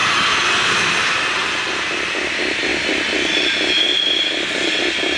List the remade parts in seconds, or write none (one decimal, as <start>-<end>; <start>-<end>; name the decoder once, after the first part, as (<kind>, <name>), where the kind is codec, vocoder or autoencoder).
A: none